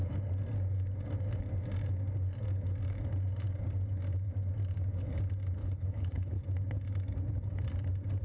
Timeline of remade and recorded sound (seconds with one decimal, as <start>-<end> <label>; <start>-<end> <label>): 0.0-5.6 recorded; 5.6-6.4 remade; 6.4-8.2 recorded